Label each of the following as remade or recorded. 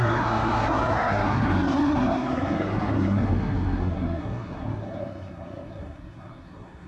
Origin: remade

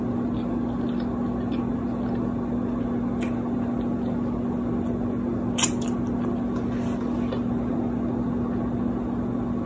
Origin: recorded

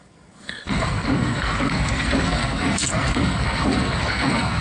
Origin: remade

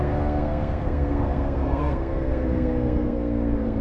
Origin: remade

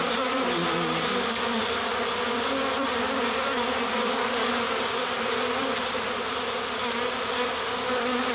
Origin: recorded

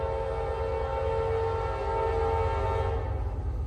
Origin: recorded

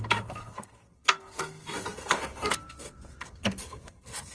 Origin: remade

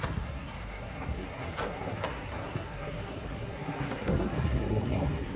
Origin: remade